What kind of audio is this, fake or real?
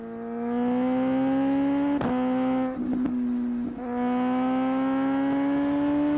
real